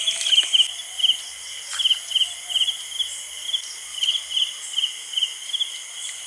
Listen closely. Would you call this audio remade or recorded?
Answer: recorded